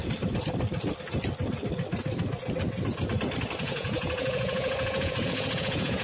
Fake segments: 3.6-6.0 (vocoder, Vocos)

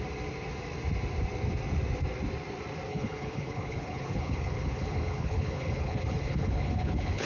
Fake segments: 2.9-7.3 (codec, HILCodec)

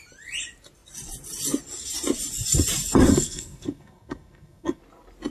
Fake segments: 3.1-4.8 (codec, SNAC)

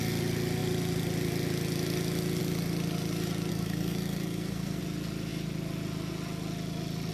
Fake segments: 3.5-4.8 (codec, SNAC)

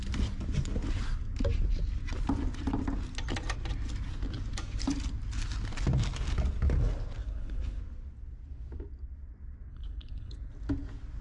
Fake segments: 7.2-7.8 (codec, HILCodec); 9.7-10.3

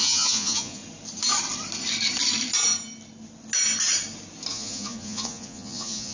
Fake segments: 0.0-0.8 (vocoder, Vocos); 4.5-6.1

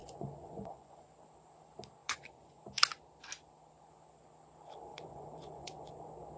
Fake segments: 0.0-1.1 (vocoder, Vocos); 2.0-2.6; 4.9-5.9